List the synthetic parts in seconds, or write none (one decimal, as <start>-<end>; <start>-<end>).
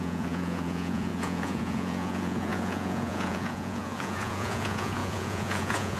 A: 0.0-6.0